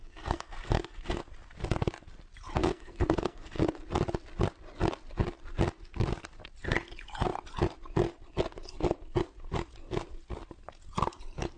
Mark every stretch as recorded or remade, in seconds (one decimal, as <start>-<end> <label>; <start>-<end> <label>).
0.0-1.2 remade; 1.2-2.6 recorded; 2.6-3.6 remade; 3.6-11.6 recorded